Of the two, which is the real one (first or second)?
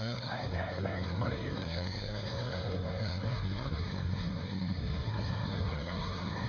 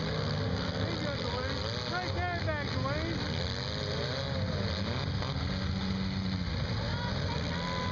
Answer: second